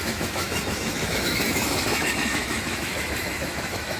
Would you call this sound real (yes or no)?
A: no